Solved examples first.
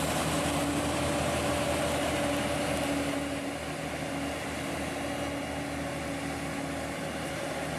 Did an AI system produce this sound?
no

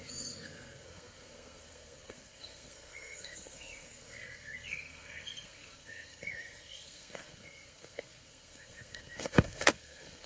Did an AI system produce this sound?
yes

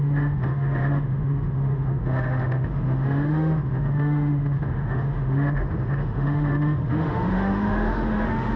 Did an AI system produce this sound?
yes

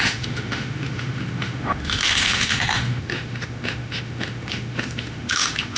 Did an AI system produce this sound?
yes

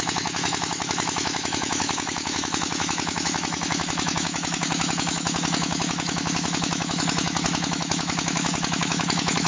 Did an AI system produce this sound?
yes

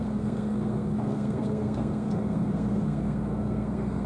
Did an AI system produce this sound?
yes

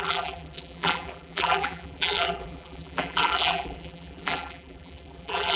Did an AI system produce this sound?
yes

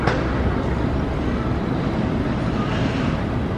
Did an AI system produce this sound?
no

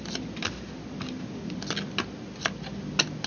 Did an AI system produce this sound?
no